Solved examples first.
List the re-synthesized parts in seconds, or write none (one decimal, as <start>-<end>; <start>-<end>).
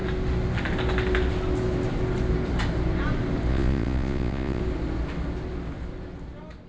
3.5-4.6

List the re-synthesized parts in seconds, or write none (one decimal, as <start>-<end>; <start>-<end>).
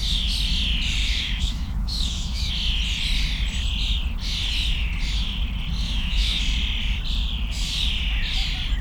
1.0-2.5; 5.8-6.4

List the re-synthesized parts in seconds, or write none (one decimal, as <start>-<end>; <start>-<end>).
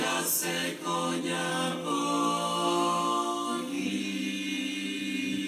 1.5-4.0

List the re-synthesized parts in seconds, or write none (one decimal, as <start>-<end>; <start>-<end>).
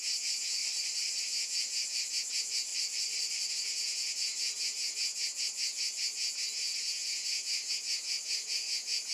0.0-0.6; 1.2-2.7; 3.5-9.1